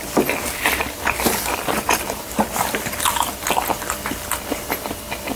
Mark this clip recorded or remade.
recorded